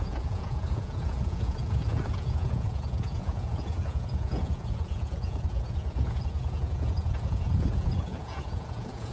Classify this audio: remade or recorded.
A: remade